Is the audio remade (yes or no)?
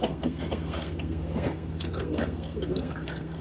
yes